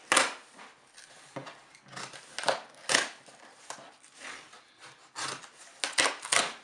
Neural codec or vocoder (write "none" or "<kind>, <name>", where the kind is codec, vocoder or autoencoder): none